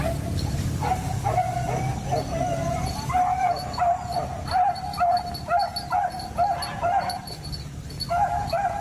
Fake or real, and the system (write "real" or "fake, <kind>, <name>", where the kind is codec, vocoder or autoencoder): real